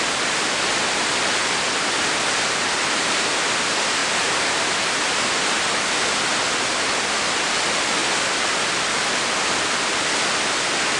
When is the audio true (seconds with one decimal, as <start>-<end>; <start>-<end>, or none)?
0.0-11.0